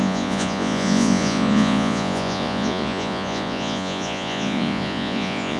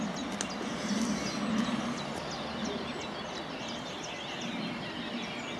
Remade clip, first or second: first